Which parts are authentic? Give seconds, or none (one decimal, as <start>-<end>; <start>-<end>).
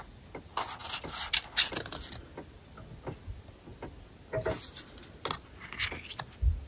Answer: 0.0-6.7